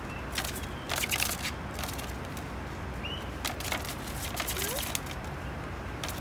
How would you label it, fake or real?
real